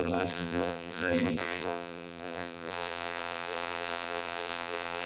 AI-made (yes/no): yes